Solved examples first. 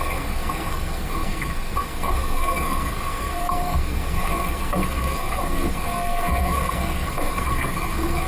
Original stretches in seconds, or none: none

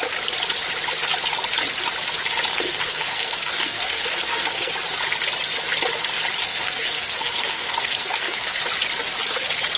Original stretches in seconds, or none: 0.0-2.5; 4.7-6.5; 8.6-9.8

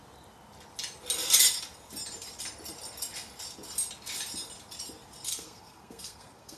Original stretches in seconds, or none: 0.0-5.3

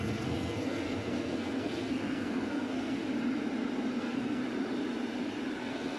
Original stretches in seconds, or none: 3.0-4.0; 4.4-5.6

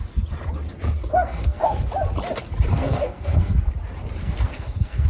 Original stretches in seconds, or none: 0.0-1.1; 1.8-2.7; 3.7-4.2

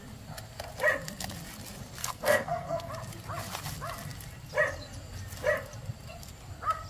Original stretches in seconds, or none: 0.0-2.0; 2.9-6.9

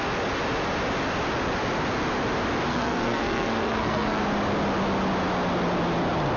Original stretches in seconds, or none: 0.0-2.7; 4.2-6.4